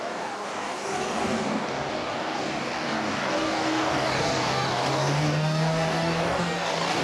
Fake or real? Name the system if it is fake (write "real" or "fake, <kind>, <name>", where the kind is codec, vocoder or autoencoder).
fake, codec, DAC